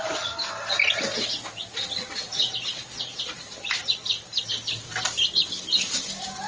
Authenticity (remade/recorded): recorded